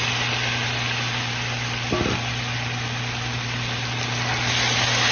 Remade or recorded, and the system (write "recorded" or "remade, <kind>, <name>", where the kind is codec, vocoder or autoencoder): recorded